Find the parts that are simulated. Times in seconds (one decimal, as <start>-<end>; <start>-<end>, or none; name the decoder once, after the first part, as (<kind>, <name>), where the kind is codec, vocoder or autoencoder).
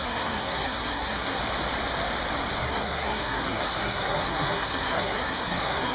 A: 0.0-1.4 (codec, SNAC); 2.6-5.9